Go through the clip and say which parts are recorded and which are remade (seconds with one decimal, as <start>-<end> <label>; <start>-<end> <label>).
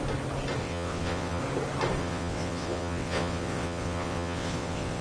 0.0-0.6 recorded; 0.6-1.4 remade; 1.4-2.0 recorded; 2.0-5.0 remade